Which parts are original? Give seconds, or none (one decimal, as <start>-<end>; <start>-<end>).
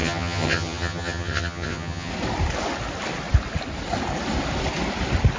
2.1-5.4